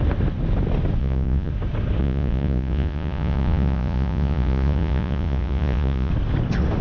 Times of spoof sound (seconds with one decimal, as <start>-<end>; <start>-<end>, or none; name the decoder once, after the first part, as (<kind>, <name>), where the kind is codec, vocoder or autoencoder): 1.0-1.5 (vocoder, Vocos); 2.0-6.1